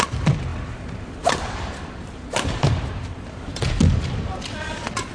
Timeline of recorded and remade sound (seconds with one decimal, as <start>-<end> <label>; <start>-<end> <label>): 0.0-0.5 recorded; 0.5-3.6 remade; 3.6-5.1 recorded